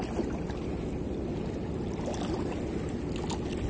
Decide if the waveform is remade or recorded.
recorded